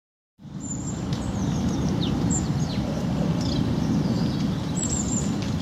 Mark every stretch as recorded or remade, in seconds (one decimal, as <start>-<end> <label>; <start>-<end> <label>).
0.0-3.2 remade; 3.2-5.6 recorded